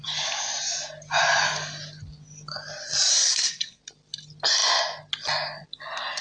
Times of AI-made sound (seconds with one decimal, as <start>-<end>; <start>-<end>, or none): 3.1-3.8